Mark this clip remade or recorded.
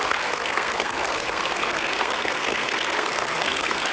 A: remade